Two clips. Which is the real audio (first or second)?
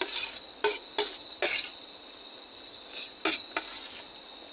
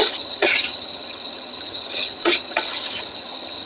first